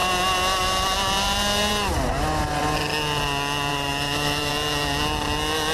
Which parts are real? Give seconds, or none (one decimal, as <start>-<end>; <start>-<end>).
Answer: 0.0-3.7; 4.5-5.7